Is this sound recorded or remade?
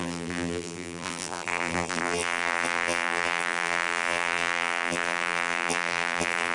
remade